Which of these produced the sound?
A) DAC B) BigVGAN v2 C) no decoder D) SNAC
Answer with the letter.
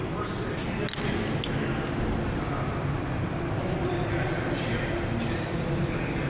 C